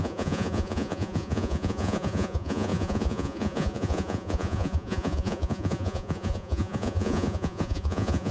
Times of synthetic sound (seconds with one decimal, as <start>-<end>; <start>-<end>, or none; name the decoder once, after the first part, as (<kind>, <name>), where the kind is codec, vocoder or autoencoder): 0.0-8.3 (vocoder, Vocos)